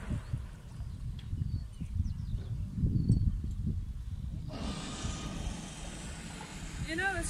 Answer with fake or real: real